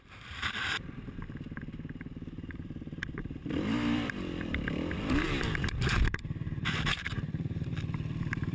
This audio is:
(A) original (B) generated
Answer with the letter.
B